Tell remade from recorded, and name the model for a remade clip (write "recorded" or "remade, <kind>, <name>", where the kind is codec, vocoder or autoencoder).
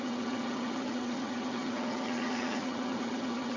remade, vocoder, HiFi-GAN